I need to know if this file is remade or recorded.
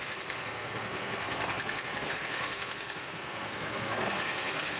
remade